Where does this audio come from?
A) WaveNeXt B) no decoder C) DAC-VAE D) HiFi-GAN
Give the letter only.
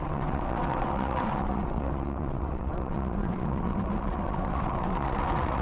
A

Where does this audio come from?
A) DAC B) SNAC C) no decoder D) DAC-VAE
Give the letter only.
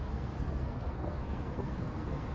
B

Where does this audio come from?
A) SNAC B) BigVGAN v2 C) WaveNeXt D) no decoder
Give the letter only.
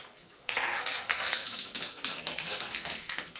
A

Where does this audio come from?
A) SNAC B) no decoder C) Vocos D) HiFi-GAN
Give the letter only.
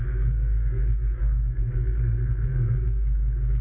A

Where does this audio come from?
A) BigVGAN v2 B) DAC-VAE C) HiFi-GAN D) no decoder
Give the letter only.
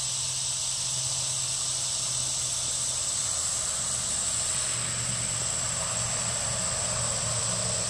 D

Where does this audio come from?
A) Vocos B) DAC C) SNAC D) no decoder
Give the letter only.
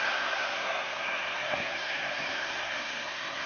C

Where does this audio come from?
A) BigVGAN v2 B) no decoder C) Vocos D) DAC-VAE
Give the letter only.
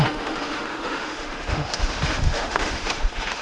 D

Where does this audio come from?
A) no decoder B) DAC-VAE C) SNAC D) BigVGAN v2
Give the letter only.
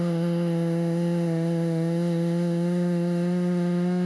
B